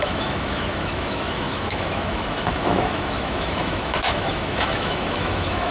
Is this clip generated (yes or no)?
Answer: yes